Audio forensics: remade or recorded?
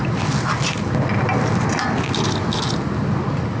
recorded